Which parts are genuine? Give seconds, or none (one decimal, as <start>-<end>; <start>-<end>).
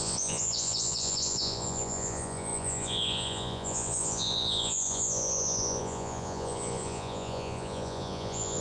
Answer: none